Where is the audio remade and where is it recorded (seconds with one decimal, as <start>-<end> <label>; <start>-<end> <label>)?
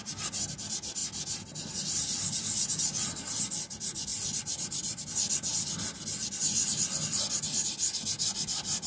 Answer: 0.0-8.9 recorded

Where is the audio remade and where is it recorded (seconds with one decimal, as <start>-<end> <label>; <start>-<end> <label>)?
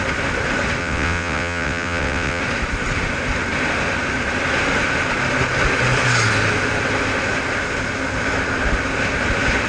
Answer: 0.0-0.8 recorded; 0.8-2.4 remade; 2.4-9.7 recorded